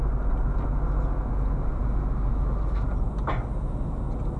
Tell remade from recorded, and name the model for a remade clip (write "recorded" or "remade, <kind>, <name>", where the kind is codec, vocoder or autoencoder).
recorded